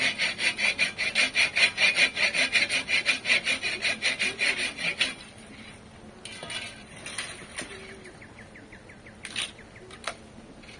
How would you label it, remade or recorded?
recorded